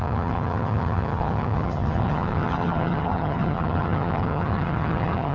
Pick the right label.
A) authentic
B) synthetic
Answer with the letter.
B